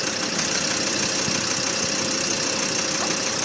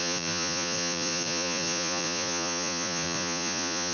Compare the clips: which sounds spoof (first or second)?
second